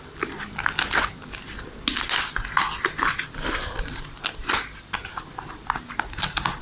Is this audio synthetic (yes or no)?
no